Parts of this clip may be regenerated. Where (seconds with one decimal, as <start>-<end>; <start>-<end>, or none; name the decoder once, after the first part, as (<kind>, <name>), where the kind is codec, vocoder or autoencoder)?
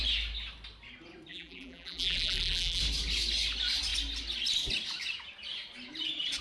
1.3-2.8 (vocoder, BigVGAN v2)